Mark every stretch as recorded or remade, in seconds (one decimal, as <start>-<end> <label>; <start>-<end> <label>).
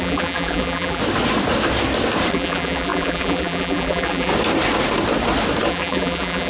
0.0-1.0 remade; 1.0-2.3 recorded; 2.3-4.3 remade; 4.3-5.7 recorded; 5.7-6.5 remade